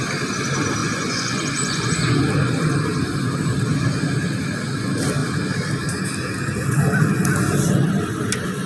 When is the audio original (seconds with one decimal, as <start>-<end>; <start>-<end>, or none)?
0.0-0.8; 2.2-8.7